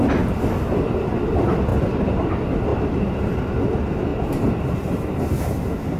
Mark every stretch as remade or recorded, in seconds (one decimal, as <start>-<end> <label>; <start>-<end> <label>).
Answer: 0.0-2.7 recorded; 2.7-3.4 remade; 3.4-4.1 recorded; 4.1-5.2 remade; 5.2-6.0 recorded